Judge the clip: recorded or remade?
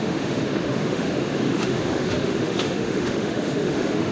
remade